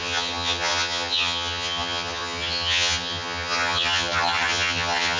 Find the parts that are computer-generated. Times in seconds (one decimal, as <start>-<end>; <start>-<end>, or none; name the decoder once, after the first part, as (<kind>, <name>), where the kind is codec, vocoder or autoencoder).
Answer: 0.0-5.2 (vocoder, HiFi-GAN)